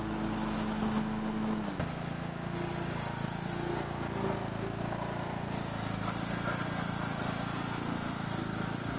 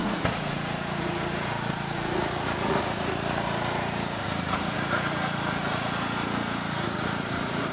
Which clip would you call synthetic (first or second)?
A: second